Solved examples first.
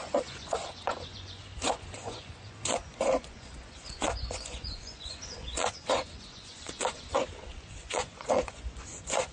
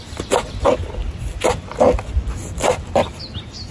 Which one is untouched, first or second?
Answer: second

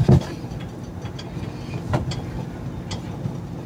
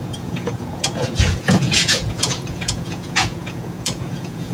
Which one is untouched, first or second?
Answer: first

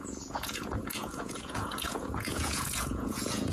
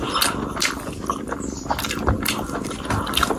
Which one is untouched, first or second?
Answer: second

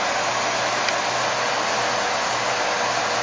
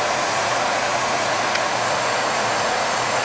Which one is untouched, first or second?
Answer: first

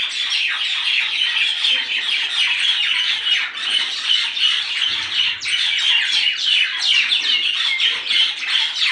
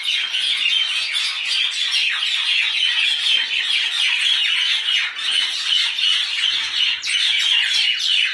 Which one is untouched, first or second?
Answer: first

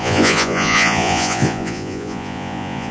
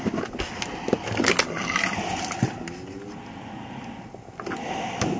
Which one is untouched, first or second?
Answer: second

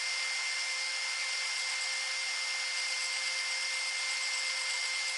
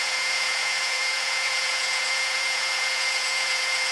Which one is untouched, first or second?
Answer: first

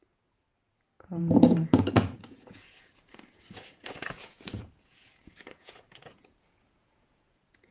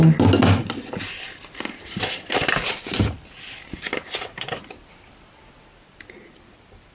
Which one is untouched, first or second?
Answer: second